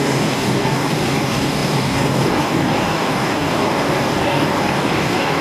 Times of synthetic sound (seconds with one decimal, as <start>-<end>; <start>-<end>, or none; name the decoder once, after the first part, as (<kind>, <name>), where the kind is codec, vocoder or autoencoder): 0.0-5.4 (codec, DAC)